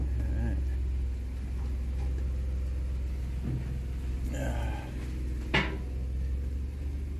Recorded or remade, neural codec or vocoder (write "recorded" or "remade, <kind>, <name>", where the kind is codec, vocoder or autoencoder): recorded